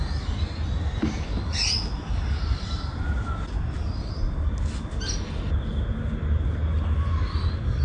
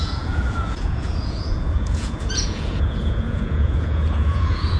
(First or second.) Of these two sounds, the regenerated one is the second